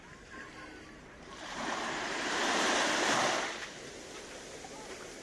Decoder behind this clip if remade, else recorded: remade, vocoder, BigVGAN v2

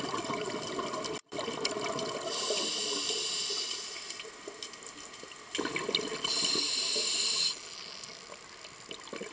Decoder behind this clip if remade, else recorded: recorded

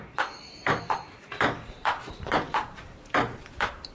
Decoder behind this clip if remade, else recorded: remade, vocoder, BigVGAN v2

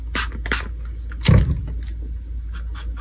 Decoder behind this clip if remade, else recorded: recorded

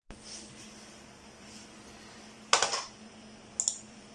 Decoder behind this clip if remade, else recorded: recorded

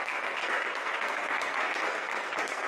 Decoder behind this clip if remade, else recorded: remade, codec, SNAC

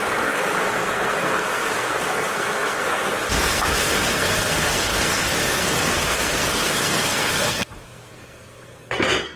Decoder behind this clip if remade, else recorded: remade, codec, SNAC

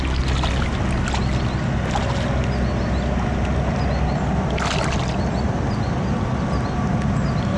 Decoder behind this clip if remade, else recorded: recorded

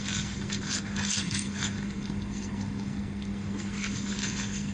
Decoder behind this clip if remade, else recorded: remade, codec, SNAC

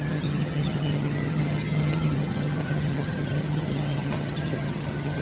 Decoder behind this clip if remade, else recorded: remade, vocoder, HiFi-GAN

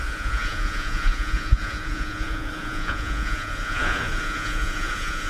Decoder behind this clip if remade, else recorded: remade, vocoder, Vocos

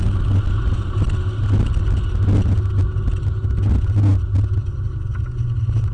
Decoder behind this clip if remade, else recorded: recorded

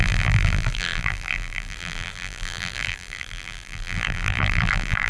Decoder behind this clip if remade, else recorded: remade, vocoder, BigVGAN v2